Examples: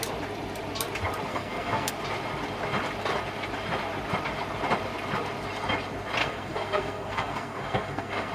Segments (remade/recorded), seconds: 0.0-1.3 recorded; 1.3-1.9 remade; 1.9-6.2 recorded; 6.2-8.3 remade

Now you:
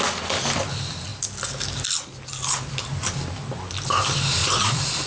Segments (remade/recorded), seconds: 0.0-4.4 recorded; 4.4-5.1 remade